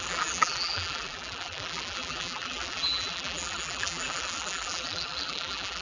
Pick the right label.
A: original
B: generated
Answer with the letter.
B